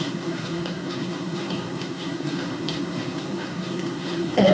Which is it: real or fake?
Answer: fake